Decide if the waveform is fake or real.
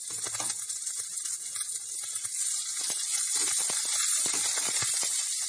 real